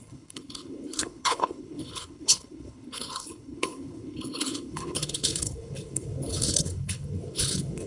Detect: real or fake fake